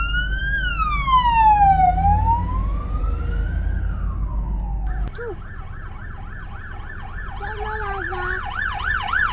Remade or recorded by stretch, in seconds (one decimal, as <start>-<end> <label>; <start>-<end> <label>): 0.0-9.3 recorded